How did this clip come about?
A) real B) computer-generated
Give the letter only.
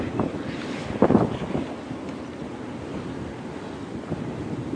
A